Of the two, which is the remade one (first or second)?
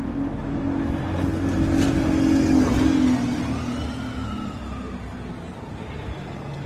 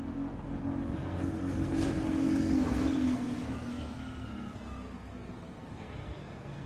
second